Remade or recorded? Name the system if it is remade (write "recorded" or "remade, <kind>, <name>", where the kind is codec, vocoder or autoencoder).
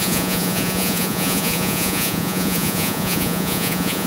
remade, vocoder, Vocos